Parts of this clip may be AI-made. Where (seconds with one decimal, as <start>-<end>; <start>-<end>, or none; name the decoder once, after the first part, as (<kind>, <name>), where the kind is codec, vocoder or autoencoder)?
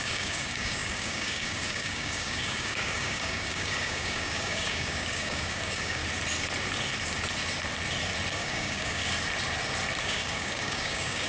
0.0-6.0 (codec, DAC); 8.3-9.0; 10.0-11.3